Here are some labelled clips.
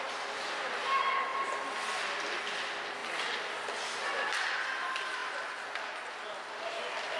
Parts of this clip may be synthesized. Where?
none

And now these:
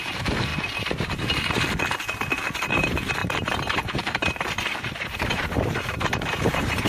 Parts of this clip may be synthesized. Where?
0.0-0.5 (vocoder, BigVGAN v2); 2.7-6.9

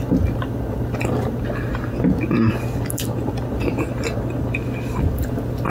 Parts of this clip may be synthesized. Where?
0.0-1.7 (vocoder, BigVGAN v2); 5.1-5.7

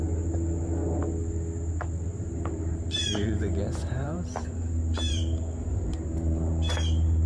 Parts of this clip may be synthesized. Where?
2.1-6.5 (vocoder, BigVGAN v2)

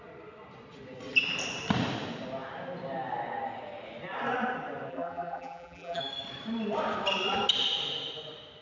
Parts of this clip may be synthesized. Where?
4.9-6.0 (vocoder, BigVGAN v2)

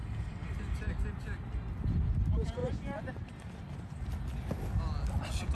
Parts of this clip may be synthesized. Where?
2.6-3.1 (vocoder, BigVGAN v2)

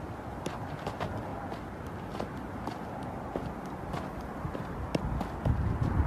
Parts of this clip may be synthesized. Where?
none